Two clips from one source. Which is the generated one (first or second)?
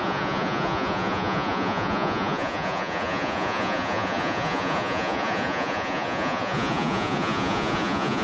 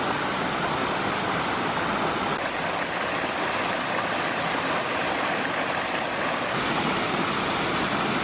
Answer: first